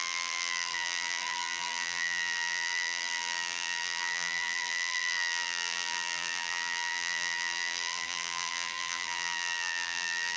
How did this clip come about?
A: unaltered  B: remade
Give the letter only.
B